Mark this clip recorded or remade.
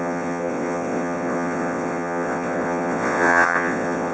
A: remade